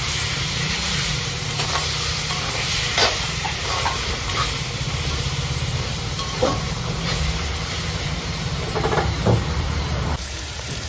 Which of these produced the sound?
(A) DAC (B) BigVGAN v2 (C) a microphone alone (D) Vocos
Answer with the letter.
B